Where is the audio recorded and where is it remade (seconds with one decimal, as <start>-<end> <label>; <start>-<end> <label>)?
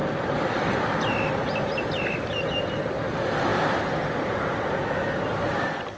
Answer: 0.0-2.9 remade; 2.9-6.0 recorded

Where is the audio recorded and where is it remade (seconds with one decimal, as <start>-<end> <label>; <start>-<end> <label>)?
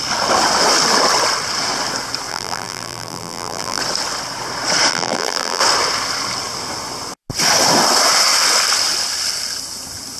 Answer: 0.0-2.3 recorded; 2.3-3.8 remade; 3.8-4.9 recorded; 4.9-5.6 remade; 5.6-10.2 recorded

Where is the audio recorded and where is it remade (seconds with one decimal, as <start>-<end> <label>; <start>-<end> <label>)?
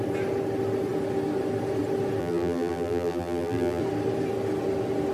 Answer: 0.0-2.2 recorded; 2.2-3.8 remade; 3.8-5.1 recorded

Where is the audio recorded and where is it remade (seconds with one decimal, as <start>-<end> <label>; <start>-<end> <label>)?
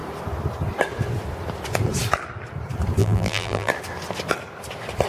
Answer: 0.0-3.0 recorded; 3.0-3.7 remade; 3.7-5.1 recorded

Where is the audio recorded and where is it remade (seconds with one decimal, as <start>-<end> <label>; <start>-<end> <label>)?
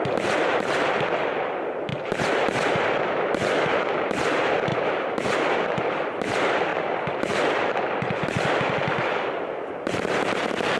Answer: 0.0-1.9 remade; 1.9-4.0 recorded; 4.0-6.7 remade; 6.7-7.9 recorded; 7.9-10.8 remade